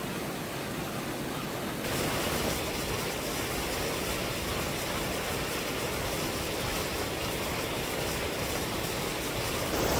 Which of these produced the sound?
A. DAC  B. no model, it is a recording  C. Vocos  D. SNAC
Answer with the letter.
B